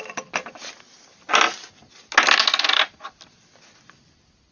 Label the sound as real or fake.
real